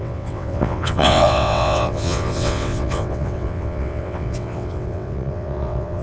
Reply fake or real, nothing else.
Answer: fake